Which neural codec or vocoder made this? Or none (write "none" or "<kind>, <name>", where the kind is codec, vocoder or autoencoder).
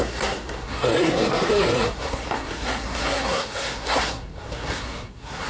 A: codec, SNAC